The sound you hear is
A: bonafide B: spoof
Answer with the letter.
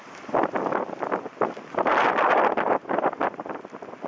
A